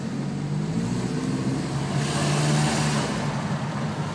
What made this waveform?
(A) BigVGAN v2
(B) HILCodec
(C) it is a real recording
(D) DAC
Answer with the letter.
C